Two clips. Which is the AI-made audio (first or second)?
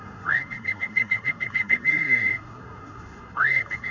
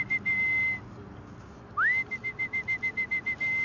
first